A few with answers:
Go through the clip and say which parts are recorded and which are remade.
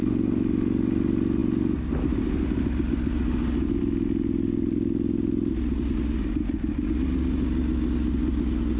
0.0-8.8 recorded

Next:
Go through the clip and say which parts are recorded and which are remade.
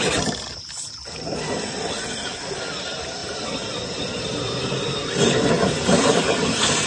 0.0-6.9 recorded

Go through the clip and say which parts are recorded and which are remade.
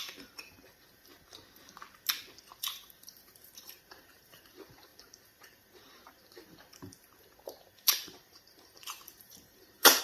0.0-1.1 remade; 1.1-2.4 recorded; 2.4-10.0 remade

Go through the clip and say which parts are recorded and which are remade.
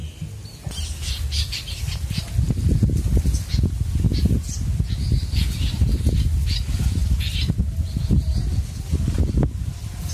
0.0-10.1 recorded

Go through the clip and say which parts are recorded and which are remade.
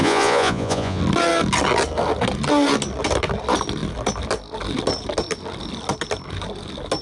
0.0-1.0 remade; 1.0-7.0 recorded